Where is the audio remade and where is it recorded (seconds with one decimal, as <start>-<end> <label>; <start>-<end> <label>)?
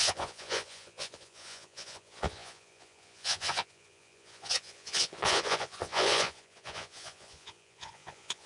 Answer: 0.0-8.5 remade